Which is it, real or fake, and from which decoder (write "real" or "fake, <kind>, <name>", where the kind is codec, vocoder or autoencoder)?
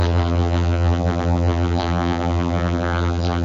fake, vocoder, BigVGAN v2